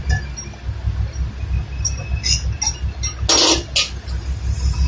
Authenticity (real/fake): real